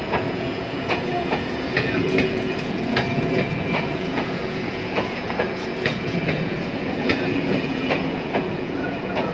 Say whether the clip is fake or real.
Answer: fake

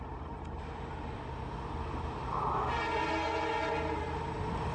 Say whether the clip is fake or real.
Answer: real